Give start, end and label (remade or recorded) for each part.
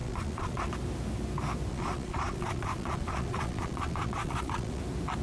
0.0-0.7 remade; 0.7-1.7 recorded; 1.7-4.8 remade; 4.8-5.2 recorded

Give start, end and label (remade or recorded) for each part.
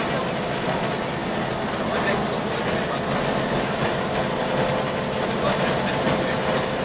0.0-6.8 recorded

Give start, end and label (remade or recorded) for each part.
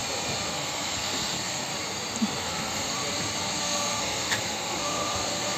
0.0-0.5 recorded; 0.5-1.7 remade; 1.7-2.4 recorded; 2.4-3.0 remade; 3.0-3.6 recorded; 3.6-5.6 remade